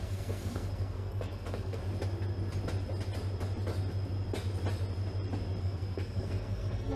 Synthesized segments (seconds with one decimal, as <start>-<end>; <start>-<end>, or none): 0.0-1.8; 5.6-7.0